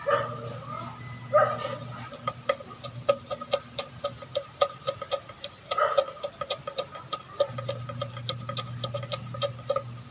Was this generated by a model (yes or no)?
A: no